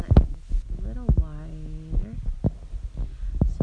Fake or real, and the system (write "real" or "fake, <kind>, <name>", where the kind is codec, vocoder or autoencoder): real